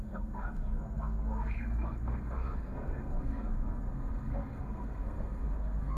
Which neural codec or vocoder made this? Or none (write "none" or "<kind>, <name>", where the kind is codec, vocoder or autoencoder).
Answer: codec, SNAC